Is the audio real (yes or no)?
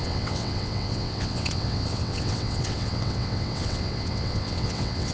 no